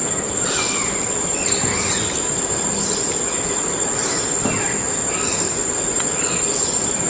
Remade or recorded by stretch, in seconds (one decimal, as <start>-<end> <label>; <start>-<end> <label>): 0.0-2.0 remade; 2.0-7.1 recorded